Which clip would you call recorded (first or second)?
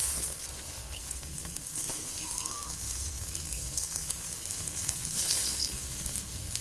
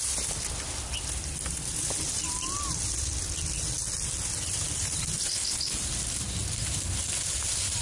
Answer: second